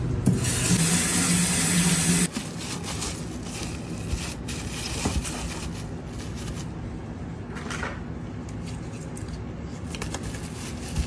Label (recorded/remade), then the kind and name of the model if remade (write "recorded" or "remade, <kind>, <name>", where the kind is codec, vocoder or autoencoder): recorded